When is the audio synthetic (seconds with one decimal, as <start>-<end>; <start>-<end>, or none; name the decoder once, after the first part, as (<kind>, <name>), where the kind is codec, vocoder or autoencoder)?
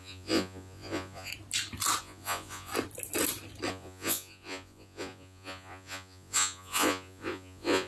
0.0-1.3 (vocoder, Vocos); 2.0-2.7; 3.7-7.9